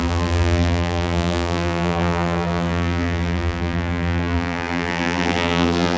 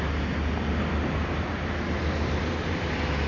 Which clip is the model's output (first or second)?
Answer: first